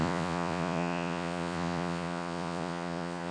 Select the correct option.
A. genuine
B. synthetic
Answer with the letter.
B